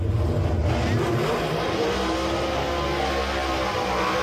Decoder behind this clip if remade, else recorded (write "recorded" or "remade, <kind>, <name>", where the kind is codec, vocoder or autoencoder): recorded